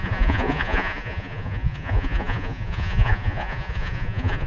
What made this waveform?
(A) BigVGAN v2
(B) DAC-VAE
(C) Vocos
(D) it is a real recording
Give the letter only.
C